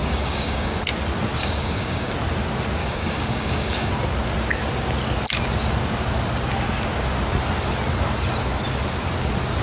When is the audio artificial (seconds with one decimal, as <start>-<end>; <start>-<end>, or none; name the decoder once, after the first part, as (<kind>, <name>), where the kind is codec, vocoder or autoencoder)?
0.0-0.8 (codec, DAC); 1.4-2.1; 2.8-3.9